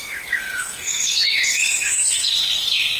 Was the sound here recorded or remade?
remade